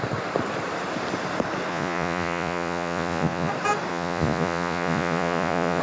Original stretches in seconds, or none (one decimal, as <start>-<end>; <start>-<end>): 0.0-1.7; 3.5-3.9